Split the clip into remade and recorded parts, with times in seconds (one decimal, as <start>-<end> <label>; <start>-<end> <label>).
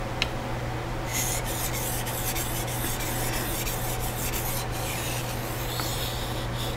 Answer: 0.0-6.8 recorded